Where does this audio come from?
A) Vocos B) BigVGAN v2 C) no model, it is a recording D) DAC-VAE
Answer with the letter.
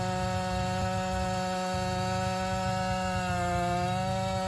C